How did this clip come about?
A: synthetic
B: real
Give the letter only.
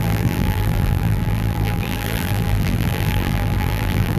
A